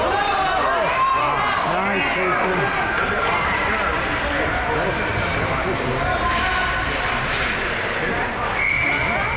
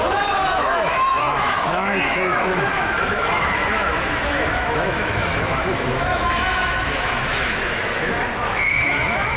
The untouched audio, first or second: first